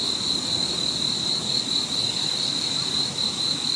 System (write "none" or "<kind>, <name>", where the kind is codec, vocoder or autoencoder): none